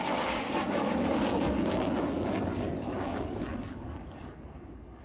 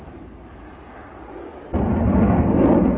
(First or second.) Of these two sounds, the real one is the second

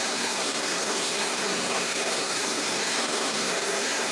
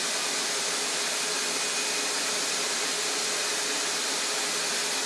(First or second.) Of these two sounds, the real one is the second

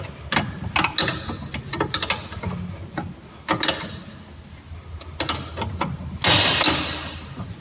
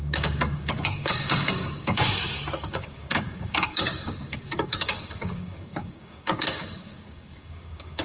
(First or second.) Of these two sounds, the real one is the first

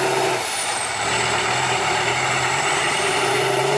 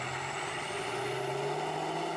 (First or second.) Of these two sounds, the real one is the second